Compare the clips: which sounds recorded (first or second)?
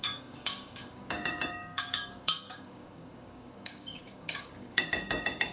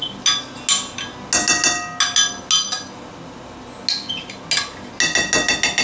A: second